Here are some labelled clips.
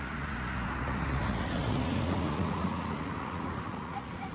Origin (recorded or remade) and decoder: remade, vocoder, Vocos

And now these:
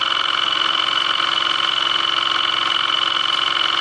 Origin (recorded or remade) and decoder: recorded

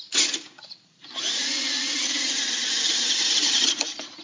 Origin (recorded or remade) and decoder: remade, vocoder, Vocos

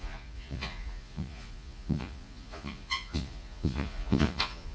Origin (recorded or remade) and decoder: remade, vocoder, Vocos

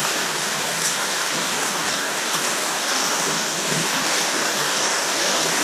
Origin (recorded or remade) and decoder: remade, codec, DAC